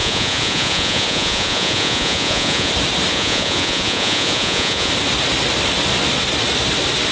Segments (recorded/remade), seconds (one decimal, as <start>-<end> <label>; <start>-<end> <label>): 0.0-2.7 remade; 2.7-3.1 recorded; 3.1-4.9 remade; 4.9-7.1 recorded